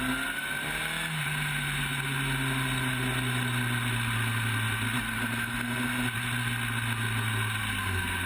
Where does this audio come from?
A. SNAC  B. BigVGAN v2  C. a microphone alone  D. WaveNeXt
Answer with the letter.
C